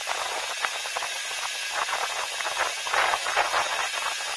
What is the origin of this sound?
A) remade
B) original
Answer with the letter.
A